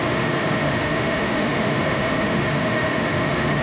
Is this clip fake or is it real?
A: fake